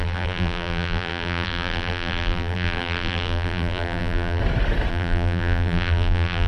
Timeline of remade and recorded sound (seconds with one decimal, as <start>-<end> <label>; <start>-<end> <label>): 0.0-4.4 remade; 4.4-4.9 recorded; 4.9-6.5 remade